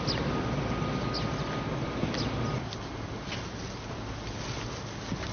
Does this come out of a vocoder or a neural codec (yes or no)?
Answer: no